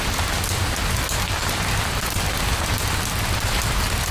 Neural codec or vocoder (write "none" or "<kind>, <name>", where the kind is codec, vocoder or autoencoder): none